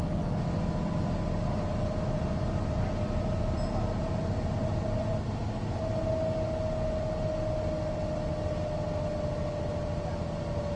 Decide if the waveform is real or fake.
real